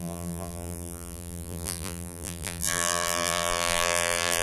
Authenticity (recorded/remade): remade